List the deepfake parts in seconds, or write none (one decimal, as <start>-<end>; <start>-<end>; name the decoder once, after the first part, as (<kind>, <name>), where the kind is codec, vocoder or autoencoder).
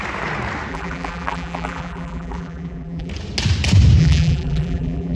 0.7-3.1 (vocoder, BigVGAN v2); 4.0-5.2